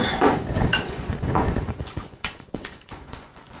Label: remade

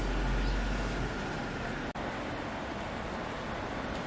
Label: recorded